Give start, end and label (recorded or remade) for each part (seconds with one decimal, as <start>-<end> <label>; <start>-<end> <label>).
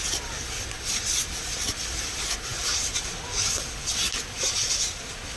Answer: 0.0-5.4 recorded